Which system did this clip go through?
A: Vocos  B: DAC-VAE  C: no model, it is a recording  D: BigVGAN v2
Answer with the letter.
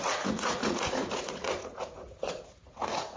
A